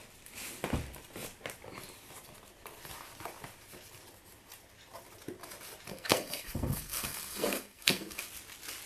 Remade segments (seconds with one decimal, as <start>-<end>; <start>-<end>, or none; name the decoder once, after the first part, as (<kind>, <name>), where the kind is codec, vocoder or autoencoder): 5.9-8.3 (codec, SNAC)